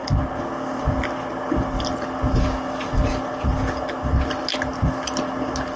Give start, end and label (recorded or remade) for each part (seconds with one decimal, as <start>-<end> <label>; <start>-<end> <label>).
0.0-5.8 recorded